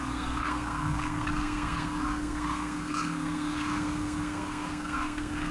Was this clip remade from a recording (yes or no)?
yes